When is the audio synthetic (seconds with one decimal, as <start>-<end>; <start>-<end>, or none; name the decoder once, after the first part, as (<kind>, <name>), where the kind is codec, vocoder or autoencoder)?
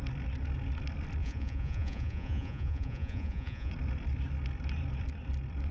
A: 1.2-3.7 (vocoder, Vocos)